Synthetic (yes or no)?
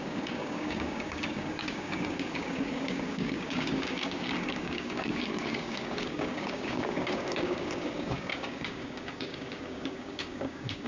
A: yes